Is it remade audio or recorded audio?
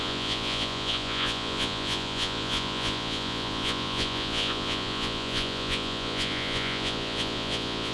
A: remade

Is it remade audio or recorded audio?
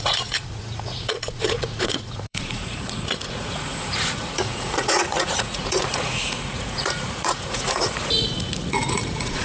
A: remade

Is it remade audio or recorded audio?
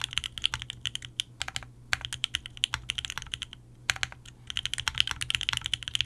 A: recorded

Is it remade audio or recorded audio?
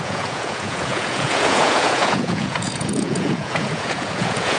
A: remade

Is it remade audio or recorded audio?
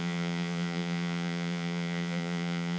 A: remade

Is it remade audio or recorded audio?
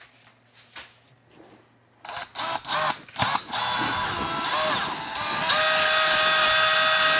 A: recorded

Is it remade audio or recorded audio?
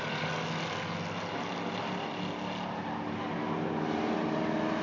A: recorded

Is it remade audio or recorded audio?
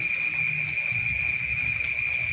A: recorded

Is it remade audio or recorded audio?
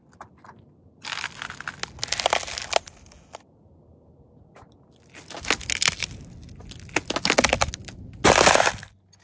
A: recorded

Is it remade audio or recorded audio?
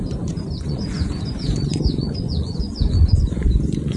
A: remade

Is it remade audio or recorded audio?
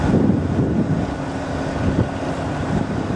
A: recorded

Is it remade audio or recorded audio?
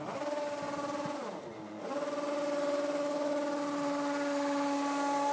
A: recorded